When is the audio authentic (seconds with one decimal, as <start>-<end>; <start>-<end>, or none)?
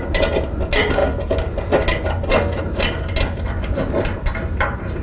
0.0-5.0